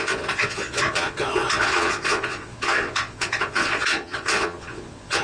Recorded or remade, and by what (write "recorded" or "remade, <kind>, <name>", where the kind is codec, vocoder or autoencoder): remade, vocoder, Vocos